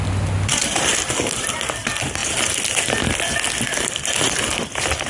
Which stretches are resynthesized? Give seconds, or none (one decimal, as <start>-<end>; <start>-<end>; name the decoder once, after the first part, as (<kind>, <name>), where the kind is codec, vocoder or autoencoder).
0.0-0.9 (vocoder, BigVGAN v2); 1.4-2.2; 4.4-5.1